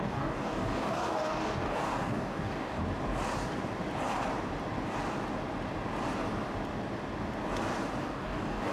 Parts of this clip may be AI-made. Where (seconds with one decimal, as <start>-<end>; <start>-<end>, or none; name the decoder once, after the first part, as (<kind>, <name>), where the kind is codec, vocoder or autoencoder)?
0.0-2.8 (codec, DAC); 8.0-8.7